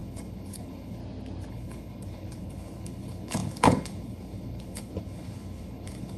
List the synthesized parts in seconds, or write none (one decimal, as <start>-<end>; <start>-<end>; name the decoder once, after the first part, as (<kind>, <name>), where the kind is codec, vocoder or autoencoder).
0.0-1.0 (codec, HILCodec); 1.5-6.2